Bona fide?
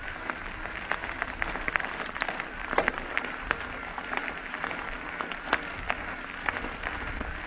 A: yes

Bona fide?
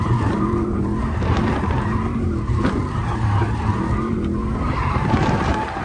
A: no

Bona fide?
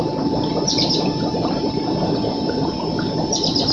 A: yes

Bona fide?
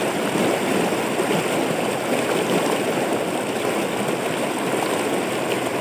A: yes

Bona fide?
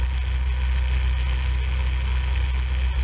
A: yes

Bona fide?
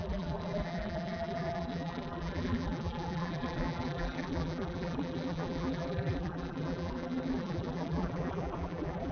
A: no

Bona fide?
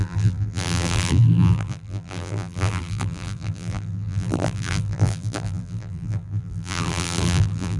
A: no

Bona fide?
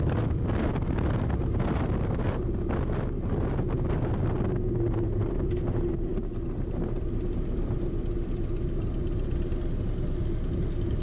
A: yes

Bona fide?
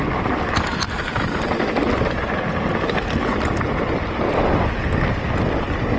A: no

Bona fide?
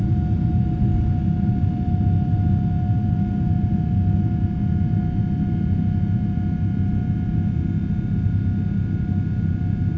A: yes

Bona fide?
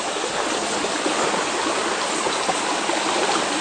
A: yes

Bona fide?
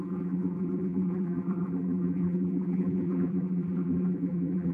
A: no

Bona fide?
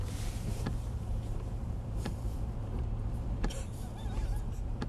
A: no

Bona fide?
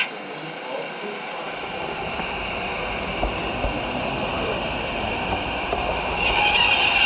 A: yes